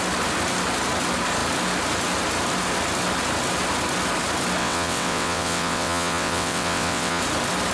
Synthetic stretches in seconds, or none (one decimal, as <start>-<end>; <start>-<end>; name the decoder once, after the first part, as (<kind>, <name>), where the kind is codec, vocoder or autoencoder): 4.6-7.2 (vocoder, WaveNeXt)